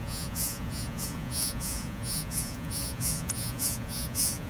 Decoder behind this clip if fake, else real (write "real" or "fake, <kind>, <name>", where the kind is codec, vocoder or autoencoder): fake, vocoder, Vocos